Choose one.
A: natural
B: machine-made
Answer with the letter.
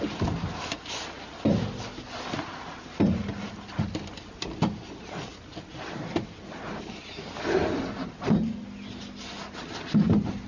A